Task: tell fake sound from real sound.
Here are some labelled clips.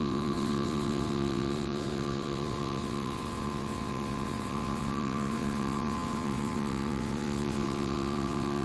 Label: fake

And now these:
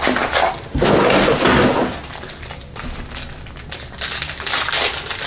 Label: real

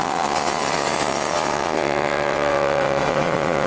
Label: fake